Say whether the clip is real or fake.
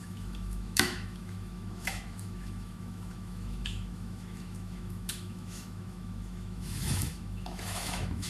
fake